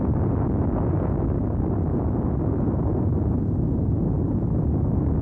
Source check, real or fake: real